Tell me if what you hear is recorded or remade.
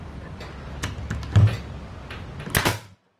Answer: recorded